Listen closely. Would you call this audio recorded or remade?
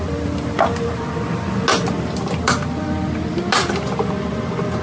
recorded